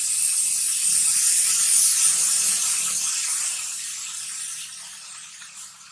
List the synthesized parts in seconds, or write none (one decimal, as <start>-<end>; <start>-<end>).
none